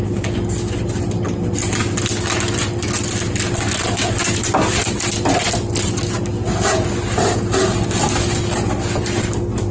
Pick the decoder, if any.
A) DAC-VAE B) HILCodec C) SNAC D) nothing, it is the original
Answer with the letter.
D